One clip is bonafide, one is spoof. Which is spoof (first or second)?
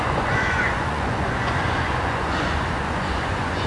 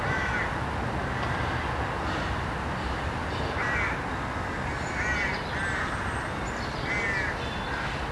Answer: first